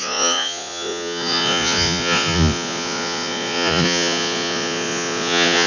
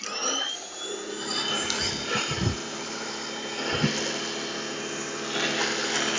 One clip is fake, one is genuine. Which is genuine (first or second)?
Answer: second